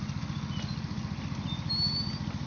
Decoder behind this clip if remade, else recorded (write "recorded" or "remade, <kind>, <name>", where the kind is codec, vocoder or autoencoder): recorded